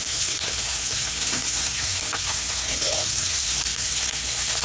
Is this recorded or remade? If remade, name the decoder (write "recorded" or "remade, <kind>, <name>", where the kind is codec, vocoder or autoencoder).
remade, codec, SNAC